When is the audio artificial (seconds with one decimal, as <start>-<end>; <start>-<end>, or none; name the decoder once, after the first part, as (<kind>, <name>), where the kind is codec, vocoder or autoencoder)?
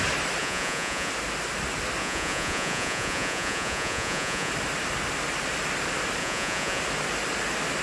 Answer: 0.4-1.1 (vocoder, Vocos); 2.0-4.5; 6.2-6.8